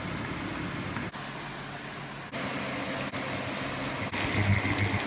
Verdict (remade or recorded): recorded